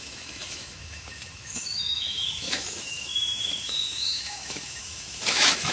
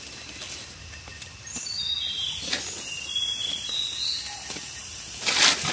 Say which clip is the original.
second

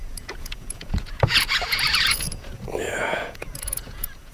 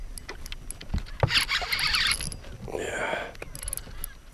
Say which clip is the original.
second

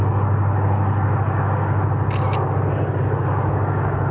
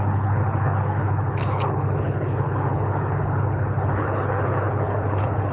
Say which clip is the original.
first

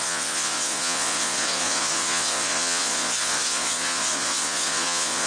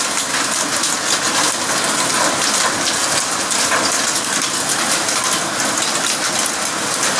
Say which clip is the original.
second